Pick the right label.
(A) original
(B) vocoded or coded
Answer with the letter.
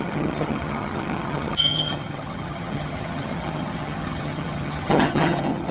B